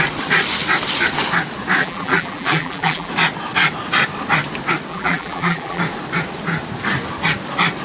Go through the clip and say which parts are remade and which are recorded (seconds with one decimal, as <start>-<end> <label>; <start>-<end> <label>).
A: 0.0-1.8 recorded; 1.8-3.1 remade; 3.1-4.9 recorded; 4.9-5.8 remade; 5.8-7.8 recorded